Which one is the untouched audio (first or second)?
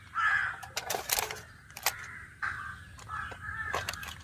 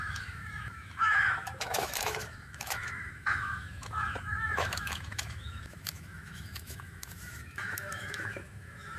first